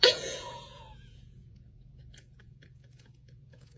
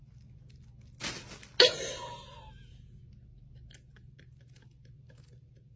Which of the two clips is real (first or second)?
second